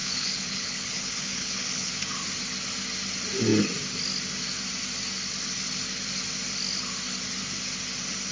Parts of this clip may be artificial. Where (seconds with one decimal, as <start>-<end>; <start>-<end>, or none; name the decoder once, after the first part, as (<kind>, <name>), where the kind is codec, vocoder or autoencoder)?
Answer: 0.0-1.9 (codec, HILCodec)